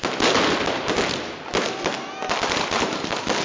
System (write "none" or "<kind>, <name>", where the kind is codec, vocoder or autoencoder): none